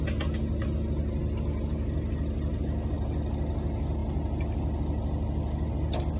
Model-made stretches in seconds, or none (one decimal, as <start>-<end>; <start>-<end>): none